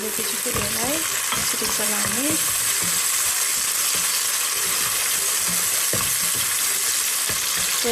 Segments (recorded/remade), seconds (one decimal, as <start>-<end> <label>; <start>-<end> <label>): 0.0-1.4 recorded; 1.4-3.0 remade; 3.0-7.9 recorded